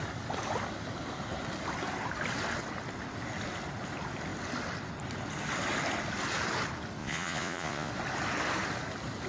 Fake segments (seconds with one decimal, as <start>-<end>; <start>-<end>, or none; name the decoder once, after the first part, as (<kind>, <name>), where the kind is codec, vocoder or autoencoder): 7.0-7.9 (vocoder, Vocos)

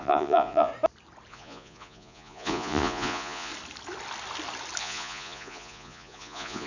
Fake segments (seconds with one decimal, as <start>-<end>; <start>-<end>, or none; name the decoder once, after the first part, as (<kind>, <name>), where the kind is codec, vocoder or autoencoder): 0.0-0.7 (vocoder, Vocos); 1.3-3.5; 4.8-6.7

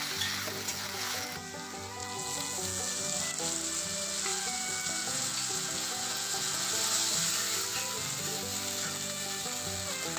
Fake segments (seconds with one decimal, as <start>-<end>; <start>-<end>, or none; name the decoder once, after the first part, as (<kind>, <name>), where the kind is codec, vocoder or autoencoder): 0.7-1.3 (vocoder, Vocos); 2.0-2.9; 4.3-6.7